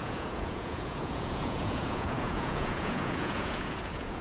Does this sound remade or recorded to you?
remade